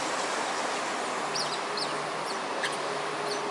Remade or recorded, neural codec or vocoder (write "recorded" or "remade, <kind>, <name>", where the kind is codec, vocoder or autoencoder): recorded